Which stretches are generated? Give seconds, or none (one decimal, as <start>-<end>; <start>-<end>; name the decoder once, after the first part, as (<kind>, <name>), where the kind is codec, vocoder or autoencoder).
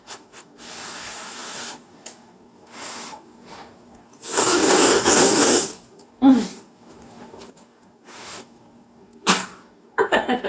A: 0.0-10.5 (codec, DAC)